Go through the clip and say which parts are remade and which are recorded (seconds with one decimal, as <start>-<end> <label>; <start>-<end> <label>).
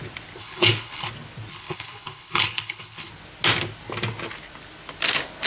0.0-0.4 recorded; 0.4-1.1 remade; 1.1-1.5 recorded; 1.5-3.1 remade; 3.1-5.5 recorded